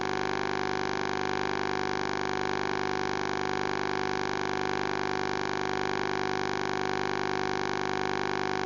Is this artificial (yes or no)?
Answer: no